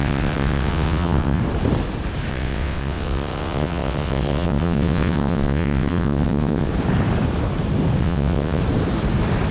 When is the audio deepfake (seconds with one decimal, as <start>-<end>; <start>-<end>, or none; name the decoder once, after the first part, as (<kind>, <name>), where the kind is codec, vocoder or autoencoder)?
0.0-1.4 (vocoder, WaveNeXt); 2.3-6.7; 8.0-8.6